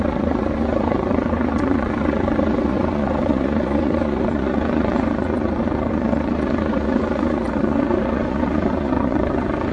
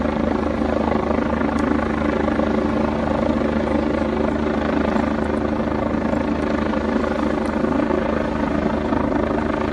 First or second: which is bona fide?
second